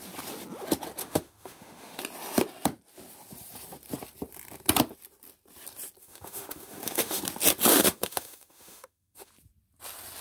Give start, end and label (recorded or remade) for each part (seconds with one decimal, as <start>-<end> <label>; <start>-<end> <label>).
0.0-1.0 recorded; 1.0-2.0 remade; 2.0-6.0 recorded; 6.0-7.2 remade; 7.2-7.7 recorded; 7.7-9.3 remade; 9.3-10.2 recorded